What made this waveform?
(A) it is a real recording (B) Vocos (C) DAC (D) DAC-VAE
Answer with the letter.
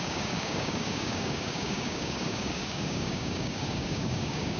C